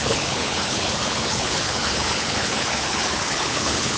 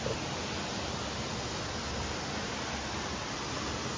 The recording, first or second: second